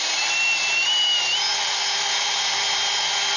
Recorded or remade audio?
recorded